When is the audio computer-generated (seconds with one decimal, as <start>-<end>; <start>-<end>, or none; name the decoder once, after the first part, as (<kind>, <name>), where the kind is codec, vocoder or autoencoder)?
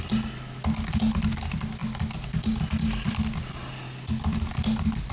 none